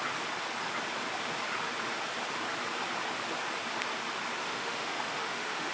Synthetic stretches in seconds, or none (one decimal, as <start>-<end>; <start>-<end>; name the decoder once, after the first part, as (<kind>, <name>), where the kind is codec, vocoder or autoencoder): 4.4-5.7 (autoencoder, DAC-VAE)

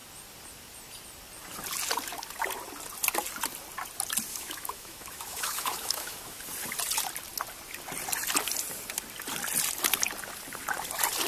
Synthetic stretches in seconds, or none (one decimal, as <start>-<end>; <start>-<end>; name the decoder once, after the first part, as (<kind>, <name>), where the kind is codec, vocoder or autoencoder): 4.3-6.4 (autoencoder, DAC-VAE)

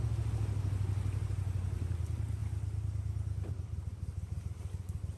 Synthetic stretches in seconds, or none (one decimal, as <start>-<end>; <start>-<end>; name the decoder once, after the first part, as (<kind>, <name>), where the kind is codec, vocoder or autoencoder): none

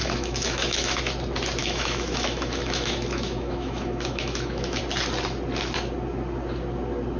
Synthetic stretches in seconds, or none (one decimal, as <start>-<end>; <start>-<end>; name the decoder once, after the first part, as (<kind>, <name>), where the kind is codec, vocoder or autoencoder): 0.0-1.0 (autoencoder, DAC-VAE); 1.6-4.8

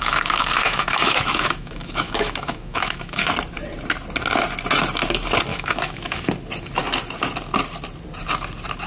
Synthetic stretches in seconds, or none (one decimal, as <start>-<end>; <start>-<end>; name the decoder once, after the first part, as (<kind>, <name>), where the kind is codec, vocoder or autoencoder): 0.0-3.3 (autoencoder, DAC-VAE); 5.5-6.3